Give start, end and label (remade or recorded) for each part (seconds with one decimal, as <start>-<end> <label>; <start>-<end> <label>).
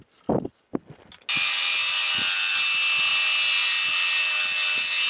0.0-5.1 recorded